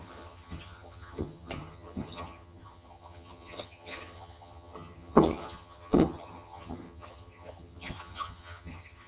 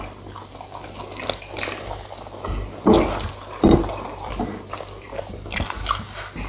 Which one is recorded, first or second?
second